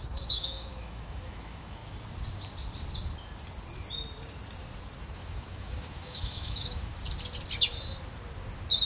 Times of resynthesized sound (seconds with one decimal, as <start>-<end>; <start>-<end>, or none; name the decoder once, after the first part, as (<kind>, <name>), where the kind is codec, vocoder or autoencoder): 0.0-1.8 (autoencoder, DAC-VAE); 5.0-6.9